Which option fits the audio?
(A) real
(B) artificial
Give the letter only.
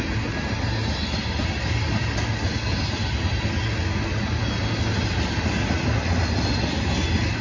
A